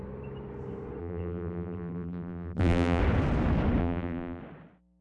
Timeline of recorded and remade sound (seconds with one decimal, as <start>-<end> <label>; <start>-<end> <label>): 0.0-1.0 recorded; 1.0-3.0 remade; 3.0-3.8 recorded; 3.8-4.4 remade; 4.4-5.0 recorded